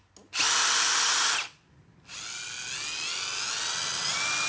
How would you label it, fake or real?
real